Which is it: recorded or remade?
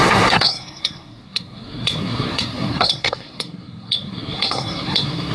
remade